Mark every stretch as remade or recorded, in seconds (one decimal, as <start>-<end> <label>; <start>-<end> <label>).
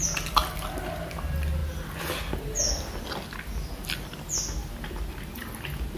0.0-6.0 recorded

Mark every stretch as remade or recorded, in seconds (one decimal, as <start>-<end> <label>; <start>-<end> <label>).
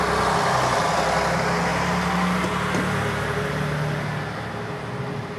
0.0-5.4 recorded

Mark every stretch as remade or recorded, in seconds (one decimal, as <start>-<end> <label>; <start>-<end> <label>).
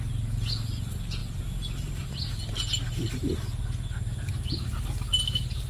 0.0-5.7 recorded